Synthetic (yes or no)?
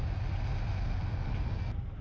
no